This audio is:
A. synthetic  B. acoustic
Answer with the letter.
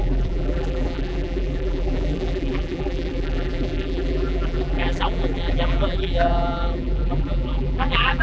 A